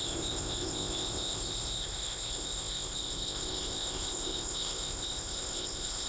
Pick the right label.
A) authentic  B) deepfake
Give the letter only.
B